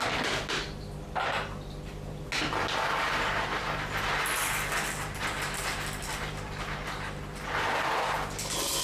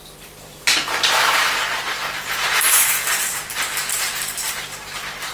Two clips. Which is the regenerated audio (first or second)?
second